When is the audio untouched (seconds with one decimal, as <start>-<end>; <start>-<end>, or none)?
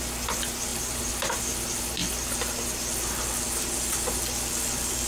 0.0-0.7; 1.4-5.1